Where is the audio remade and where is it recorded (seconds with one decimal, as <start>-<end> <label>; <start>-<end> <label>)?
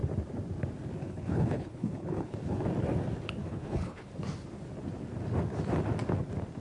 0.0-1.0 recorded; 1.0-2.6 remade; 2.6-3.4 recorded; 3.4-4.1 remade; 4.1-6.6 recorded